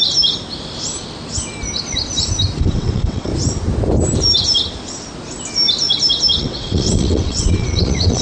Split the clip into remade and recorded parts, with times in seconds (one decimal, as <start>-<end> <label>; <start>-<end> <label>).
0.0-2.6 recorded; 2.6-3.3 remade; 3.3-6.4 recorded; 6.4-8.2 remade